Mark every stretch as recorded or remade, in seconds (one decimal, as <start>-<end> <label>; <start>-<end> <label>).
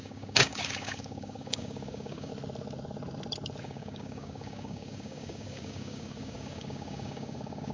0.0-2.3 remade; 2.3-3.6 recorded; 3.6-7.7 remade